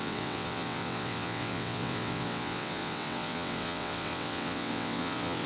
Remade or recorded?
remade